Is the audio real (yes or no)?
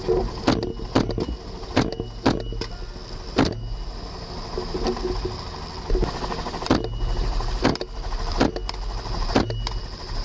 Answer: yes